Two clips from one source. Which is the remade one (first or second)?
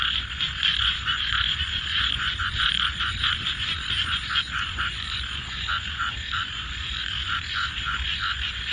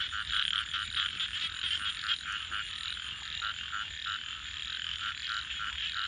first